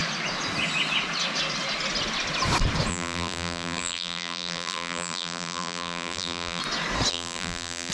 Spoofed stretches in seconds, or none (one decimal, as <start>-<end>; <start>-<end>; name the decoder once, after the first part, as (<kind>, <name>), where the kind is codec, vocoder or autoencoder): 2.9-6.6 (vocoder, BigVGAN v2); 7.1-7.9